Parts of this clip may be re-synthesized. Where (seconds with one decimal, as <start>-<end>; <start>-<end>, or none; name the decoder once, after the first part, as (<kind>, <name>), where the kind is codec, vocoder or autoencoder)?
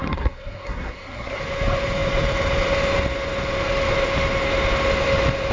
0.0-1.4 (codec, SNAC)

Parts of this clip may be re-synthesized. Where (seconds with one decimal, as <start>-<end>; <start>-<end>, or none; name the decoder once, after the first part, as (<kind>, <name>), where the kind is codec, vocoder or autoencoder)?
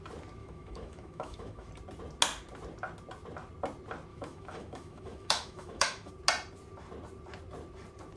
0.4-1.7 (autoencoder, DAC-VAE); 4.1-6.1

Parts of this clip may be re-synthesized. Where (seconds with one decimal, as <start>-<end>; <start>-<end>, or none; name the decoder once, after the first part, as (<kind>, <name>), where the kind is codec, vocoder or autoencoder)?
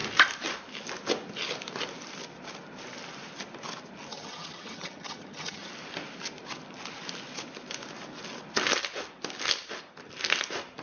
4.1-5.7 (vocoder, HiFi-GAN)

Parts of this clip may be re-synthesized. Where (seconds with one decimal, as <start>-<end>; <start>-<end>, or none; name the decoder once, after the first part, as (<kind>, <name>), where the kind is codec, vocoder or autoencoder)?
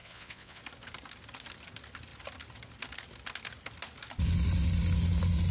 0.0-0.6 (vocoder, WaveNeXt)